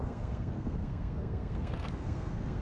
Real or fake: fake